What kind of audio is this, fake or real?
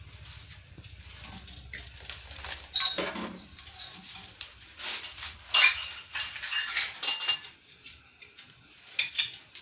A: real